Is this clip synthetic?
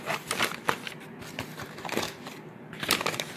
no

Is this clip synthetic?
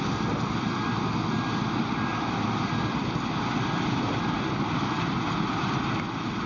no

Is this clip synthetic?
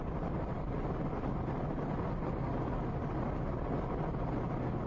no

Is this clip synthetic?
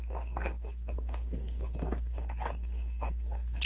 yes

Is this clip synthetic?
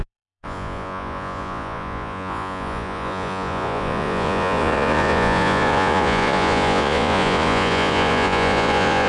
yes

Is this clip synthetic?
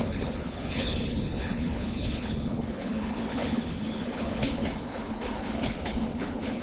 yes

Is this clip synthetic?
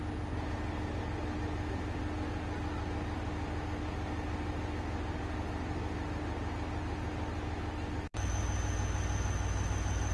no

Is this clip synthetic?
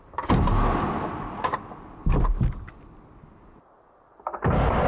no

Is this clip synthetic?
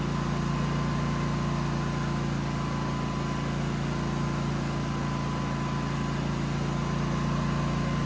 no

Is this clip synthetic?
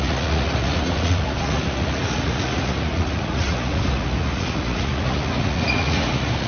yes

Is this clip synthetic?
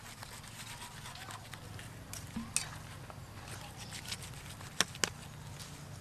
no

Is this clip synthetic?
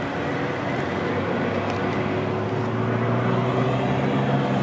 no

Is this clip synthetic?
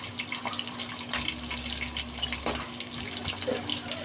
no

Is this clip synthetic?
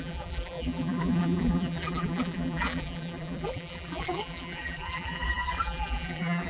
yes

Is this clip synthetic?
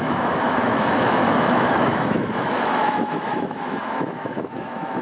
yes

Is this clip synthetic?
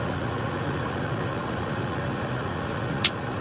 yes